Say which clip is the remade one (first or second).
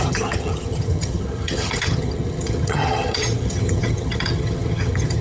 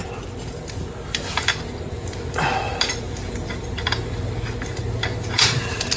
first